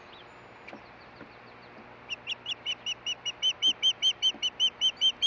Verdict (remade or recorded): recorded